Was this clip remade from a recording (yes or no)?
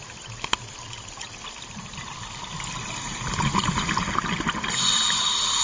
no